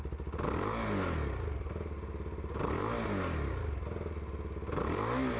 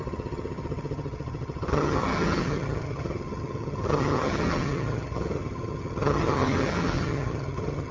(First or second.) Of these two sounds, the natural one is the first